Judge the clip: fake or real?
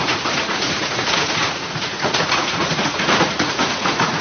fake